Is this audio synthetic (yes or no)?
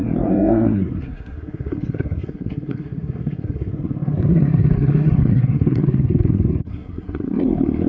yes